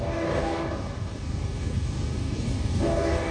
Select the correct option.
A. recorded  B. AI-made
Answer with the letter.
B